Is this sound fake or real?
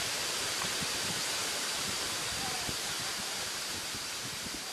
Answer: fake